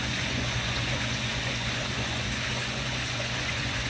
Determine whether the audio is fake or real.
fake